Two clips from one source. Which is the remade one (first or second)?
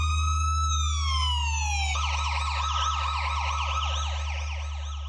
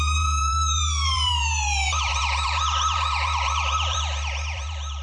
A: second